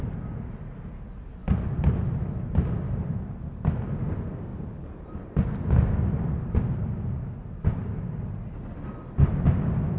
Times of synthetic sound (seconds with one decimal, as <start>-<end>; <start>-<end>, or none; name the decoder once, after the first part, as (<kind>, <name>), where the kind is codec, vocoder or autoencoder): none